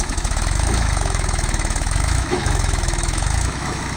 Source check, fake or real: fake